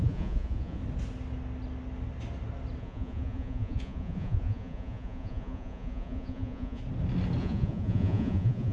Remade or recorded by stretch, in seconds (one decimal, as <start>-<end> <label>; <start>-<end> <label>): 0.0-0.8 remade; 0.8-2.8 recorded; 2.8-6.8 remade; 6.8-7.4 recorded; 7.4-8.7 remade